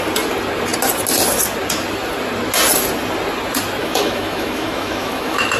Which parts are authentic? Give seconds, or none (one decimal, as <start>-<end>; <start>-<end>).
0.0-3.8